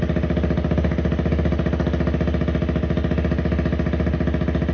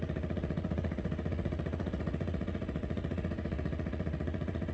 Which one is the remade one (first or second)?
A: second